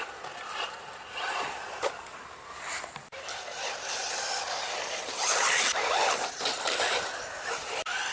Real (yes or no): yes